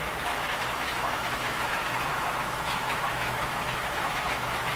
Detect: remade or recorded remade